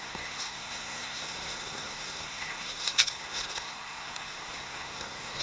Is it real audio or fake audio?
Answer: fake